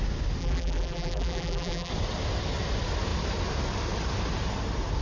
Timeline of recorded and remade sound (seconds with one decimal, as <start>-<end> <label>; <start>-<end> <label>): 0.0-0.4 recorded; 0.4-1.9 remade; 1.9-5.0 recorded